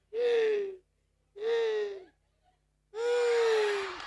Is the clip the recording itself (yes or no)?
yes